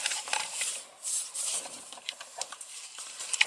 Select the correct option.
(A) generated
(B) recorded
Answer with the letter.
A